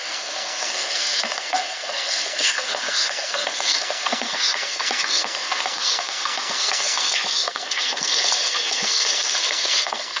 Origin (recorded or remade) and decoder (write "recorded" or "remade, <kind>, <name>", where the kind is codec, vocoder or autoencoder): remade, codec, SNAC